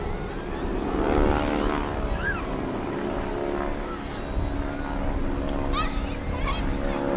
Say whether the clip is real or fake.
real